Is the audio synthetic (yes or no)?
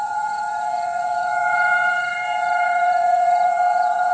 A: yes